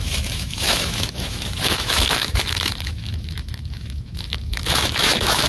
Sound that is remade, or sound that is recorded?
remade